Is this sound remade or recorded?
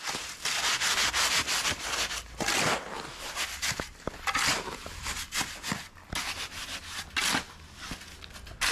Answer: recorded